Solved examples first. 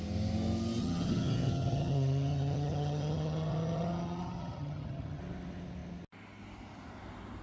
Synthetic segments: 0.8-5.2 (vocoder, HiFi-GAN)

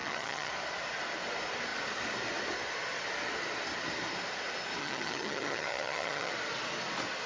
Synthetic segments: 0.0-0.5 (vocoder, HiFi-GAN); 4.8-6.3

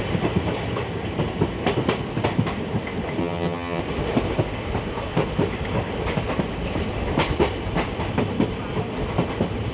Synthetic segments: 3.2-3.8 (vocoder, HiFi-GAN)

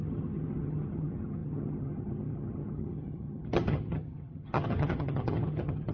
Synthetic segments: 0.0-5.9 (vocoder, HiFi-GAN)

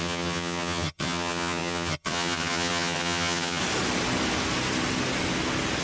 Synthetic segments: 0.0-3.6 (vocoder, HiFi-GAN)